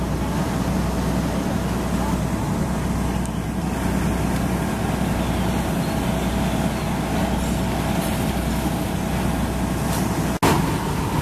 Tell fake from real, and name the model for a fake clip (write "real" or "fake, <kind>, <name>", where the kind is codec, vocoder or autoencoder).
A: real